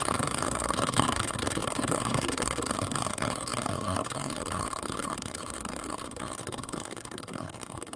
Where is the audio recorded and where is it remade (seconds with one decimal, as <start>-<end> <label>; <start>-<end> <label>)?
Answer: 0.0-8.0 remade